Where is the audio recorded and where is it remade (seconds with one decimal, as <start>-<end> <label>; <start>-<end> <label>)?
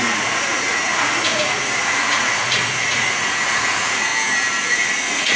0.0-4.1 remade; 4.1-4.7 recorded; 4.7-5.4 remade